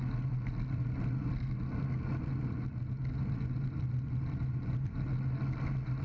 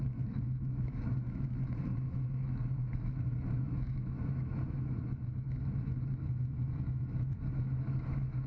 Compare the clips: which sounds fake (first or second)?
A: second